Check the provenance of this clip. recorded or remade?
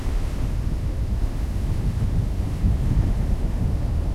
remade